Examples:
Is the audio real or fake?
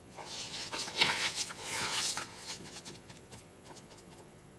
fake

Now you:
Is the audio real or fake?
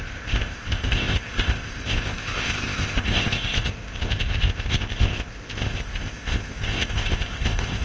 fake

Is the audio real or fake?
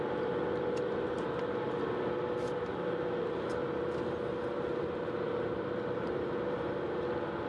real